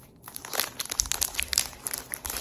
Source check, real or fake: real